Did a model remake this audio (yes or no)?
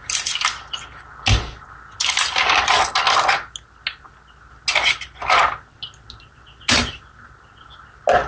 no